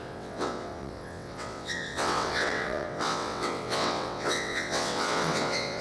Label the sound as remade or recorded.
remade